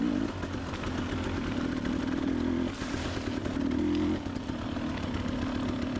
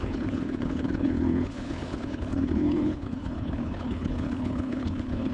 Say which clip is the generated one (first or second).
second